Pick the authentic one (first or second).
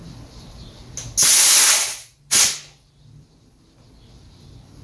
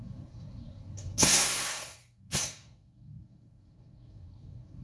first